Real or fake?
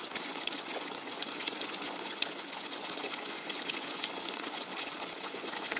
fake